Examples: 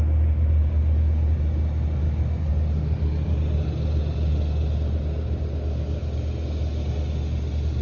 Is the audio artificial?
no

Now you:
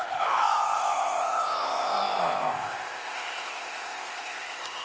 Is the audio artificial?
yes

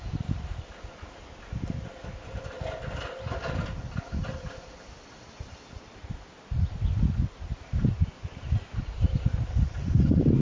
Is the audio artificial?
no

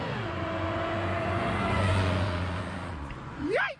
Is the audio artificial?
yes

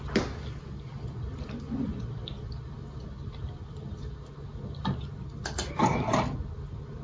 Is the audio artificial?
no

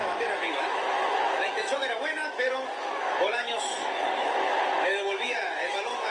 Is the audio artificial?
yes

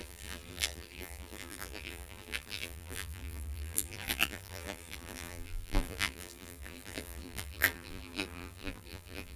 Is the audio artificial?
yes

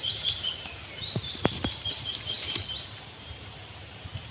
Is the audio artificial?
yes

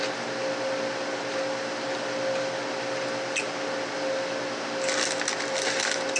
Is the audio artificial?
no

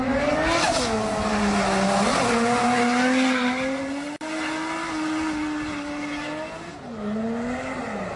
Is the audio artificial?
no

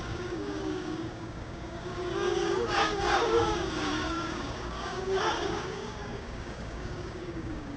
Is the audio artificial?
yes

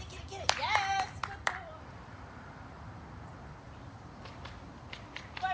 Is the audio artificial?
yes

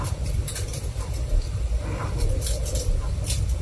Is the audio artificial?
no